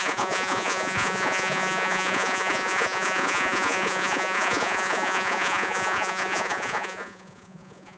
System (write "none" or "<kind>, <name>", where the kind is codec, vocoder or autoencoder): vocoder, Vocos